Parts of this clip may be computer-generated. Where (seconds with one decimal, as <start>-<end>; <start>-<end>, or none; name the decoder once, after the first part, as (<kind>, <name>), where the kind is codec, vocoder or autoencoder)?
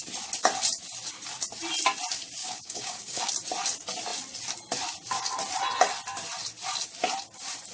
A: 2.4-3.3 (codec, DAC)